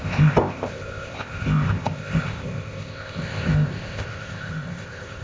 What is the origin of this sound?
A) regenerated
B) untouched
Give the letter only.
A